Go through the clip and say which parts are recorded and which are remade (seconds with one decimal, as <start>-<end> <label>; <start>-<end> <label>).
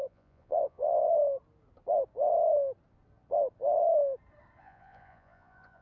0.0-1.1 remade; 1.1-4.6 recorded; 4.6-5.8 remade